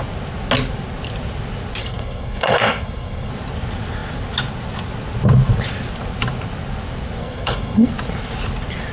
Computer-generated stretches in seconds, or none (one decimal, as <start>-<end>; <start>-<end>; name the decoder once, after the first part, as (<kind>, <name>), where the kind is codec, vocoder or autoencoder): 1.8-3.3 (codec, SNAC); 7.2-7.9